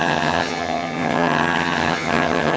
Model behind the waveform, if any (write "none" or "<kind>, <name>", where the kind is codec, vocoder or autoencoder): vocoder, HiFi-GAN